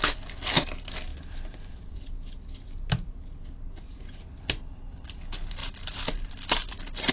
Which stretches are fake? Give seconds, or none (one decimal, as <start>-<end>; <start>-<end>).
none